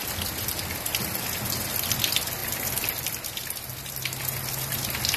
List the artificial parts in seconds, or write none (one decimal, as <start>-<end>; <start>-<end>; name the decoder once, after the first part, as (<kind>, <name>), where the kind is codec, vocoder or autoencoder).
none